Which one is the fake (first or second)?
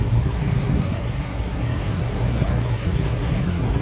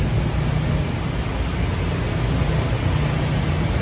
first